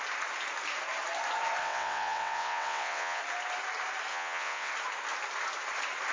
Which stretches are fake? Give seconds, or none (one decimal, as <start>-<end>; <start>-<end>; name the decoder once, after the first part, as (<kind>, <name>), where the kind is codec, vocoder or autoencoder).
1.6-3.2 (vocoder, WaveNeXt); 4.1-4.7